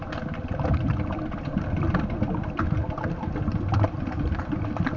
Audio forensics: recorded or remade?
recorded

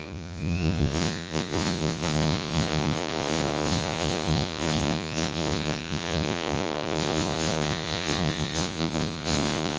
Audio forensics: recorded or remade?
remade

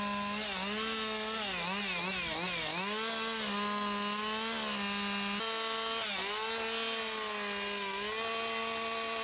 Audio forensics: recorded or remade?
recorded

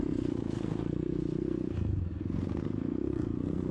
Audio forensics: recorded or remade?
remade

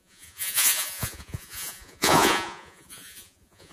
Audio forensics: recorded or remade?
remade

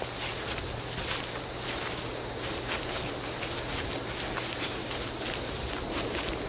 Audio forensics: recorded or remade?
recorded